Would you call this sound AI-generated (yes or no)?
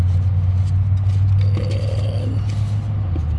no